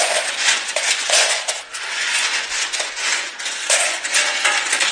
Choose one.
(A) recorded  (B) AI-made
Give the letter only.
B